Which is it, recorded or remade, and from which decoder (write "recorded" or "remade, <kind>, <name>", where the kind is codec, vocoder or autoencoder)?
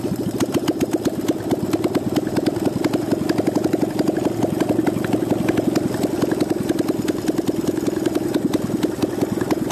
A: recorded